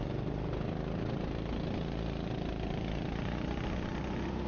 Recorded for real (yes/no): yes